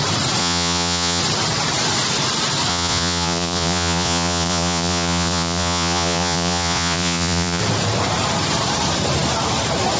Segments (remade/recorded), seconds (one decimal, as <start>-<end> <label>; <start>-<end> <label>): 0.0-0.4 recorded; 0.4-1.2 remade; 1.2-2.7 recorded; 2.7-7.6 remade; 7.6-10.0 recorded